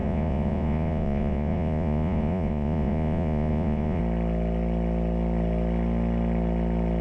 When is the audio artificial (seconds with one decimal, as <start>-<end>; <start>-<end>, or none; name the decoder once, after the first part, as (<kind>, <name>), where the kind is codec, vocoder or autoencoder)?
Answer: 0.0-4.0 (vocoder, Vocos)

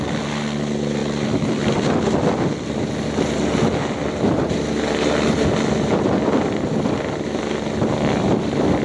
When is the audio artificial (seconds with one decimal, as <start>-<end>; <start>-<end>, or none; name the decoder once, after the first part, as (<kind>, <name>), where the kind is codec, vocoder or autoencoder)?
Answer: 1.0-1.6 (vocoder, BigVGAN v2)

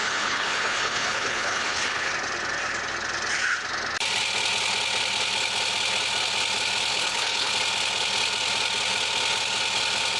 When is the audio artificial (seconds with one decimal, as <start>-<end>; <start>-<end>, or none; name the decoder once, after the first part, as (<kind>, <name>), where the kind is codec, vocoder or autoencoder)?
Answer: 0.0-2.1 (codec, HILCodec); 6.9-7.5

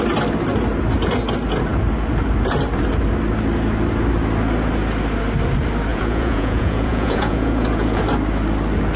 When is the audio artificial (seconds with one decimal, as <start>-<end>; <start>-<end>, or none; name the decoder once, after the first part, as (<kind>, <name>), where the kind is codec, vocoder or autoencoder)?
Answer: 5.9-8.0 (vocoder, Vocos)

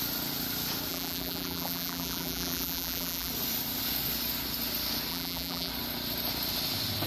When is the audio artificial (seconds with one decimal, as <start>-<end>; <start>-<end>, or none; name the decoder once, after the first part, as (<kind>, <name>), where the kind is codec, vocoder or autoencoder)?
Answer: 0.9-3.3 (vocoder, BigVGAN v2); 5.1-5.7